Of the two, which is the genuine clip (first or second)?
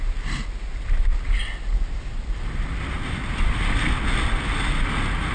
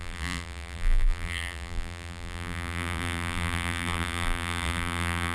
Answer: first